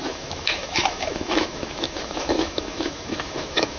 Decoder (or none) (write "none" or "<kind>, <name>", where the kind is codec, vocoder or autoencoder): autoencoder, DAC-VAE